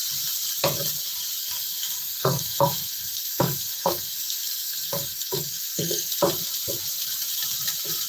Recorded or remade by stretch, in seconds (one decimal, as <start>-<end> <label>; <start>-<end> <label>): 0.0-1.4 recorded; 1.4-6.2 remade; 6.2-8.1 recorded